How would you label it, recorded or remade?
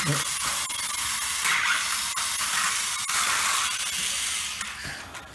recorded